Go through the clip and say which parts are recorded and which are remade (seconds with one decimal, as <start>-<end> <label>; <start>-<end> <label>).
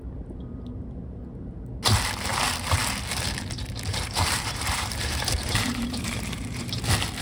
0.0-3.9 recorded; 3.9-6.8 remade; 6.8-7.2 recorded